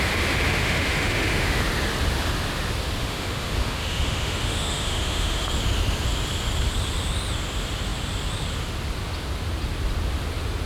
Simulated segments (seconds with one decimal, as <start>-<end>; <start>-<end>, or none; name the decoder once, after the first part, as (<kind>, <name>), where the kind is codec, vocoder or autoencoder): 0.6-1.6 (autoencoder, DAC-VAE); 3.0-5.5

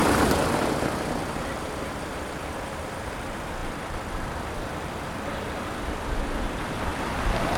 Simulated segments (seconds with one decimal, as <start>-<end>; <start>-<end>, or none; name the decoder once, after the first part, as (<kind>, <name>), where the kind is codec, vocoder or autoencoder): 0.0-6.9 (vocoder, BigVGAN v2)

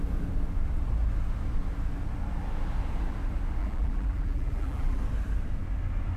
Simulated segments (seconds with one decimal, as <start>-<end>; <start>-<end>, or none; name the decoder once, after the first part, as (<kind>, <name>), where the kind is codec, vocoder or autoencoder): 3.6-5.0 (vocoder, BigVGAN v2)

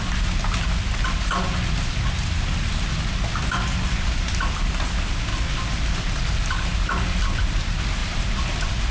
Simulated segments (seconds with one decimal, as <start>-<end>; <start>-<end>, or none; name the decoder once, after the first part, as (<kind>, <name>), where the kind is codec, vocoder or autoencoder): 5.3-6.3 (vocoder, BigVGAN v2); 8.0-8.9

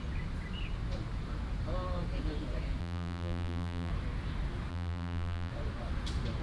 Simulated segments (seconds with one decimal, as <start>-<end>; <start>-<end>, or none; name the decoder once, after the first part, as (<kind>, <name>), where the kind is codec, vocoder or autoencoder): 2.8-3.9 (vocoder, BigVGAN v2); 4.7-5.5

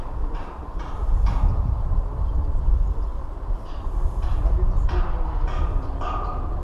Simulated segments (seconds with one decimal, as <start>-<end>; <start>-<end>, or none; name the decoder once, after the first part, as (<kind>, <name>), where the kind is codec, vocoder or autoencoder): 0.0-6.6 (vocoder, BigVGAN v2)